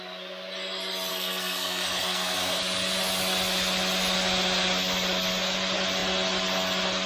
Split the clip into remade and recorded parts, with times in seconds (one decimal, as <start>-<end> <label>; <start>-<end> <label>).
0.0-1.1 recorded; 1.1-2.6 remade; 2.6-7.1 recorded